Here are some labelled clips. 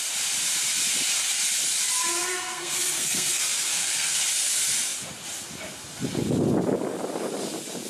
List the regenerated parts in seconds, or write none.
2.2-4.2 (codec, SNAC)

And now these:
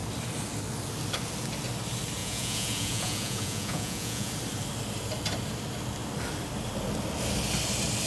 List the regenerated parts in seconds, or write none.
2.2-4.3 (vocoder, Vocos)

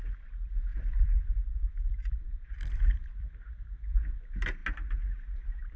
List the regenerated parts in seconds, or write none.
none